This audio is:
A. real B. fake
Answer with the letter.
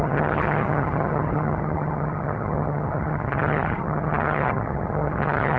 B